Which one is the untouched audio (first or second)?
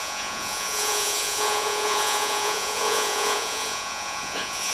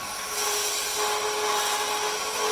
second